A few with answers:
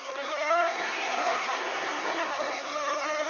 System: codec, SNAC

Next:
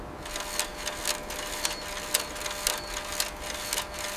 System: none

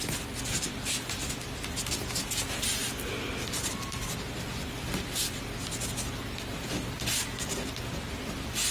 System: none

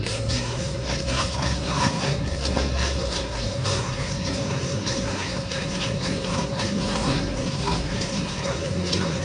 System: codec, SNAC